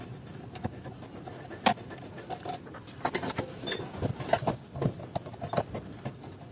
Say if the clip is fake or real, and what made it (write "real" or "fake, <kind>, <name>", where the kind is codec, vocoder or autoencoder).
real